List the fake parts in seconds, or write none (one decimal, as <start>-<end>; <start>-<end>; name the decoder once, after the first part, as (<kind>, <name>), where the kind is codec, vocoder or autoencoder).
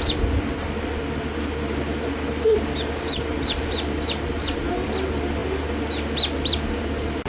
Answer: none